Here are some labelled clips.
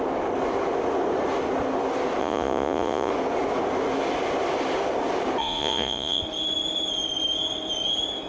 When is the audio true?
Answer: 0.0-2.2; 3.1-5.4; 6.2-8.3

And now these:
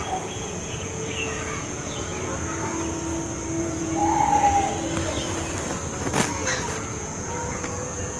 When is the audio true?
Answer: 2.1-3.6; 4.0-6.8

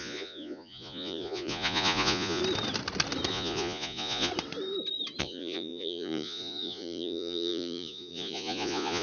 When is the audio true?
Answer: 2.4-3.3; 4.3-5.2

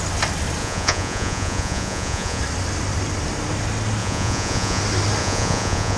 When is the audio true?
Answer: 0.0-0.6; 2.4-4.0; 4.8-5.2

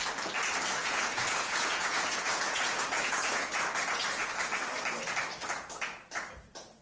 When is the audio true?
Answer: 0.0-0.8; 3.5-6.8